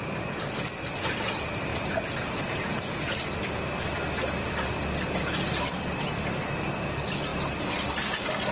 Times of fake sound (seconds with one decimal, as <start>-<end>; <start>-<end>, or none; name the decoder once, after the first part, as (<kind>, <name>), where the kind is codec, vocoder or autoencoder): none